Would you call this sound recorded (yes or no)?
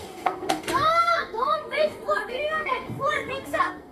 no